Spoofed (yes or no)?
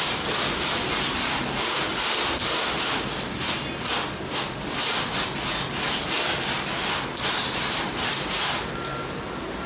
no